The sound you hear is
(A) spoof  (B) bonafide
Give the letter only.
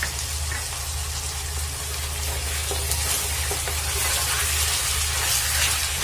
B